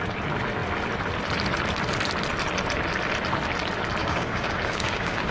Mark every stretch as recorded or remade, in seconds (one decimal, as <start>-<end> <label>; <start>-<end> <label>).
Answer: 0.0-4.0 recorded; 4.0-5.3 remade